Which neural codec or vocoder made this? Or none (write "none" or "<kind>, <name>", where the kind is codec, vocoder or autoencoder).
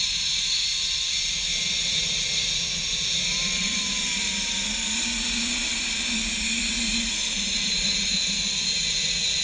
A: none